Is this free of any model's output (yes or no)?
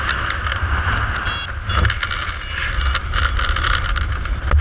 yes